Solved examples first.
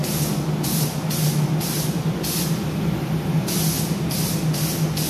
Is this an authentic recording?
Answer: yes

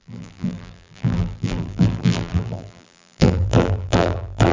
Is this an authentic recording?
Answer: no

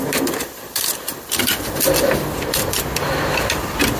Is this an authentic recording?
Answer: yes